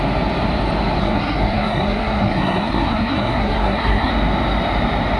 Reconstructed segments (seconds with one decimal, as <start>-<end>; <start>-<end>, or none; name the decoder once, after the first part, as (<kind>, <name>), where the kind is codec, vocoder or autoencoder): 1.0-4.1 (codec, SNAC)